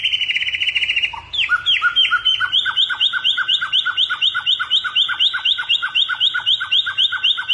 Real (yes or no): yes